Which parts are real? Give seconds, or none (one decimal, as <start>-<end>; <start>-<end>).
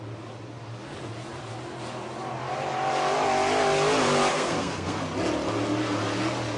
0.0-4.3; 5.0-6.6